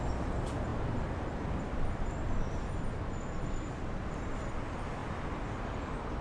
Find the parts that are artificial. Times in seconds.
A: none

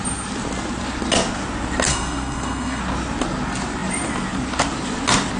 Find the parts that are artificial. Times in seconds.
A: 1.9-2.8